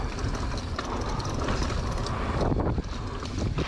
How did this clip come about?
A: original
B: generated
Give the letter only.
A